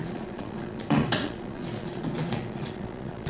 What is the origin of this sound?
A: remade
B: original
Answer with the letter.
A